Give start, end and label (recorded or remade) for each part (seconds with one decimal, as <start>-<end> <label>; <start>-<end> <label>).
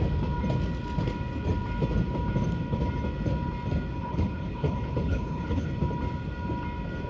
0.0-4.0 recorded; 4.0-5.7 remade; 5.7-7.1 recorded